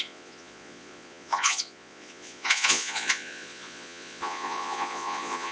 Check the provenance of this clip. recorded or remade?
remade